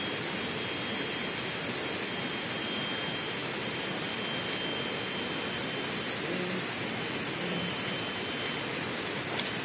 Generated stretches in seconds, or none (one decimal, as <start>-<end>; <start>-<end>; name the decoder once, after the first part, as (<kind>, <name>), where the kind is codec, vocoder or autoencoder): none